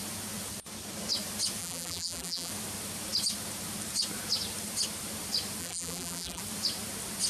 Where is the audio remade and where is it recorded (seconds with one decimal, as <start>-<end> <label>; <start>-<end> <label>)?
0.0-1.6 recorded; 1.6-2.5 remade; 2.5-5.6 recorded; 5.6-6.4 remade; 6.4-7.3 recorded